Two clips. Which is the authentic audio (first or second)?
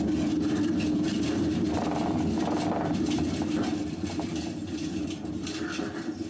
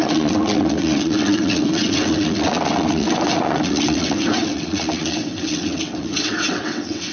first